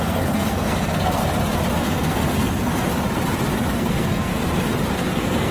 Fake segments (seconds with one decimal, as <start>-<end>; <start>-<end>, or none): 0.0-1.2; 1.8-2.9; 3.7-4.3; 4.9-5.5